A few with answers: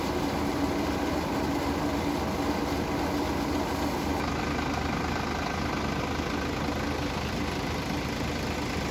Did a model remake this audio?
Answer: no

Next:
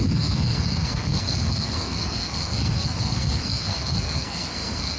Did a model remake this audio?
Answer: yes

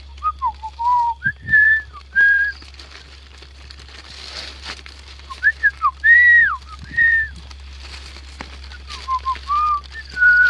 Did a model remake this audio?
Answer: yes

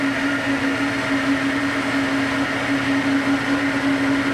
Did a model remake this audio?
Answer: no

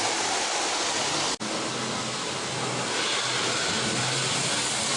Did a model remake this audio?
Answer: no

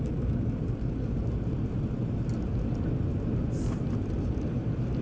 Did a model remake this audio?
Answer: no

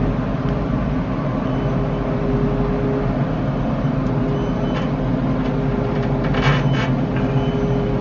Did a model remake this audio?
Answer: no